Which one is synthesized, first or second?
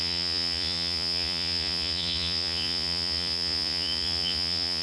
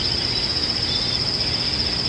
first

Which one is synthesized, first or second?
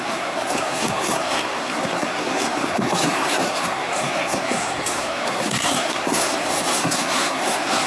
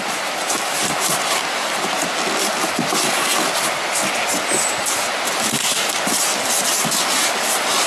first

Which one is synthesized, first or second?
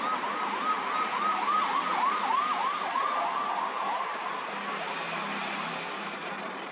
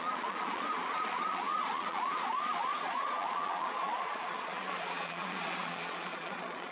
second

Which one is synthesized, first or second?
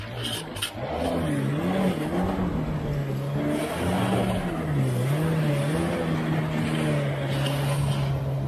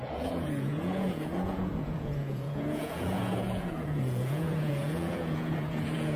second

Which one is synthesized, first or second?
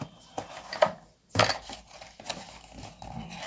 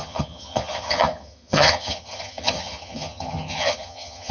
second